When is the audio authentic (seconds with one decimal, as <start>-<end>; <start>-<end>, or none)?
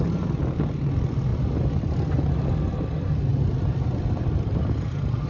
0.0-5.3